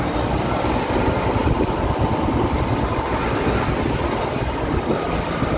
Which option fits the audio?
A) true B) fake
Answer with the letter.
A